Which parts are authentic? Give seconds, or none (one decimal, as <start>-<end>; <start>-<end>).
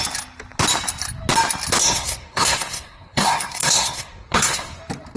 0.0-1.8; 4.8-5.2